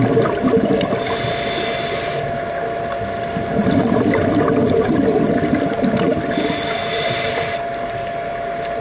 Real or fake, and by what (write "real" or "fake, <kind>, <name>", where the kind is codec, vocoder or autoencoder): real